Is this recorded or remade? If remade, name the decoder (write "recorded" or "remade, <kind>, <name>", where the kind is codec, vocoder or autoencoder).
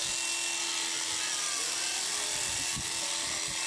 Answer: recorded